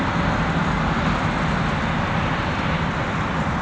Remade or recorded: recorded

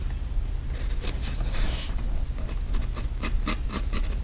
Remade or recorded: recorded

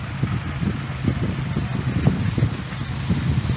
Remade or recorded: recorded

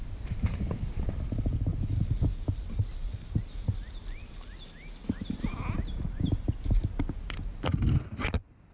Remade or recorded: recorded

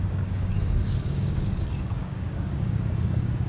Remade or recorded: remade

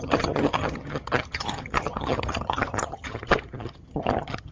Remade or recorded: remade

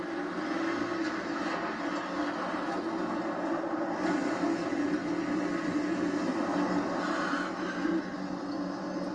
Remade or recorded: recorded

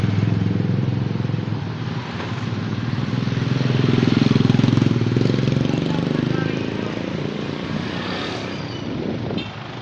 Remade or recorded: recorded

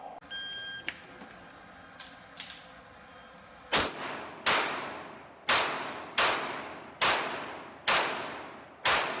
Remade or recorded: recorded